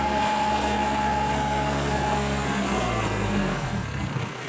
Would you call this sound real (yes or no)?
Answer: no